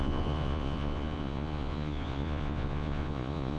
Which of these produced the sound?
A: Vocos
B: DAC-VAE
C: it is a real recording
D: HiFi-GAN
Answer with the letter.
A